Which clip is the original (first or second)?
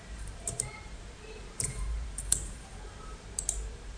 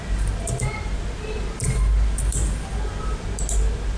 second